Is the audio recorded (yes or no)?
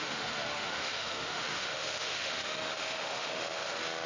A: no